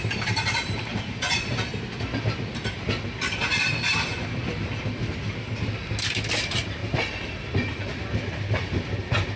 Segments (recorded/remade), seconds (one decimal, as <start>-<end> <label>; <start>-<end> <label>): 0.0-1.7 remade; 1.7-6.3 recorded; 6.3-6.8 remade; 6.8-8.2 recorded; 8.2-9.4 remade